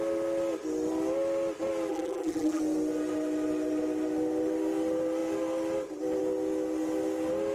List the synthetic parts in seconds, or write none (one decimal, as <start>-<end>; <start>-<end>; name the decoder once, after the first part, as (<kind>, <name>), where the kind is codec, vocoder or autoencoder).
1.9-2.6 (vocoder, BigVGAN v2)